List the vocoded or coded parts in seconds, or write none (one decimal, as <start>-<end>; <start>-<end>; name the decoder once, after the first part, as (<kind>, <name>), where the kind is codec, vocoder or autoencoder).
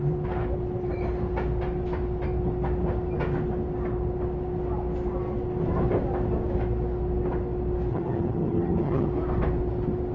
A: 7.9-9.1 (vocoder, HiFi-GAN)